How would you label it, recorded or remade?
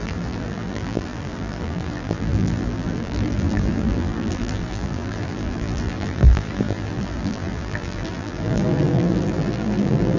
remade